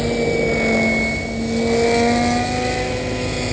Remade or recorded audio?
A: recorded